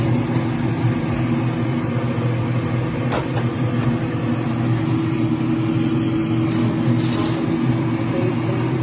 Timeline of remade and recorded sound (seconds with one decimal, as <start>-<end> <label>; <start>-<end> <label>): 0.0-8.8 recorded